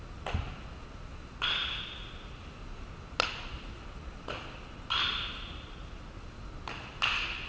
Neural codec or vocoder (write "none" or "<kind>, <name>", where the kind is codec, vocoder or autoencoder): none